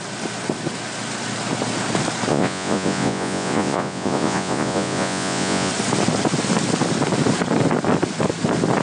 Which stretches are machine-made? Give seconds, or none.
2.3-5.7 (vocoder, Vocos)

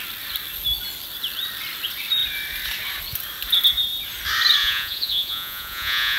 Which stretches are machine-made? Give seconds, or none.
4.6-6.2 (vocoder, Vocos)

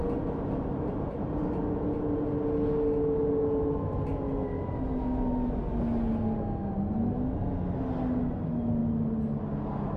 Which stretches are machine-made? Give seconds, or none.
none

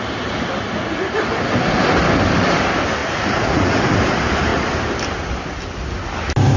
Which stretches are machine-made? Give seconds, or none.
3.0-3.8 (vocoder, Vocos)

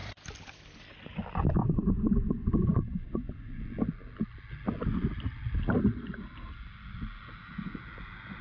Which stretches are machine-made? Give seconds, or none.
1.6-3.6 (vocoder, Vocos)

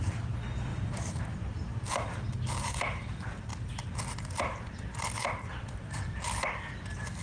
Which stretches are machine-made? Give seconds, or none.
none

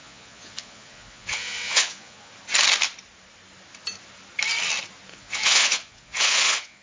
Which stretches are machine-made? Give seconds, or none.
0.0-2.3 (vocoder, Vocos); 5.1-6.8

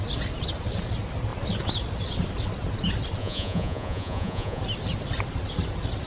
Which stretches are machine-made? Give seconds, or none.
3.2-4.6 (vocoder, Vocos)